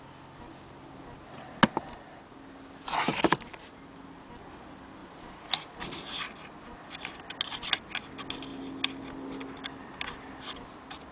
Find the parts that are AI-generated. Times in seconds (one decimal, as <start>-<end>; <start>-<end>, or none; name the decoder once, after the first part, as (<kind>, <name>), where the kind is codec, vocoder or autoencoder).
5.0-5.5 (vocoder, BigVGAN v2)

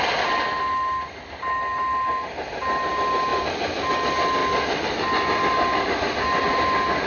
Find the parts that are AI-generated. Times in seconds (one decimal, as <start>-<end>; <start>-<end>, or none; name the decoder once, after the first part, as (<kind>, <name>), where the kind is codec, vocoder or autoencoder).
2.1-2.9 (vocoder, BigVGAN v2); 3.3-3.9